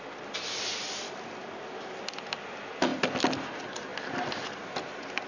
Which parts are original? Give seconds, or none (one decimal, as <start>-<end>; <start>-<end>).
0.0-1.4; 1.9-5.3